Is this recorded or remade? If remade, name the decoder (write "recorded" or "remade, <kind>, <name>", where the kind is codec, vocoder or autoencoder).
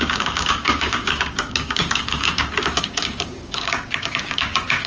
remade, codec, DAC